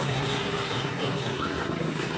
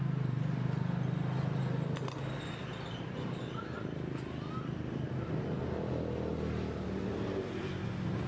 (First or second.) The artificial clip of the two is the first